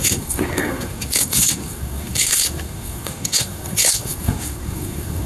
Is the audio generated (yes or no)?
yes